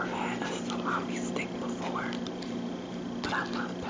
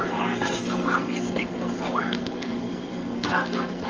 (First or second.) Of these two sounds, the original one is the first